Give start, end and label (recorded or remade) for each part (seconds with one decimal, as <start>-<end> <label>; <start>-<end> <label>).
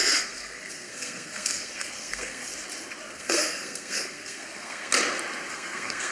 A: 0.0-2.5 remade; 2.5-3.1 recorded; 3.1-4.9 remade; 4.9-5.5 recorded; 5.5-6.1 remade